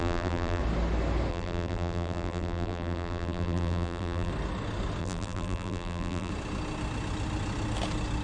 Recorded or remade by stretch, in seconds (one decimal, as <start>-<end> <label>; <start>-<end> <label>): 0.0-0.6 remade; 0.6-1.3 recorded; 1.3-4.3 remade; 4.3-5.0 recorded; 5.0-6.3 remade; 6.3-8.2 recorded